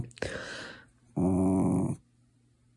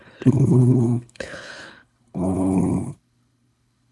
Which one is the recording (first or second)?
first